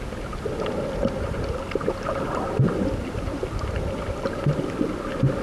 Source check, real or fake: real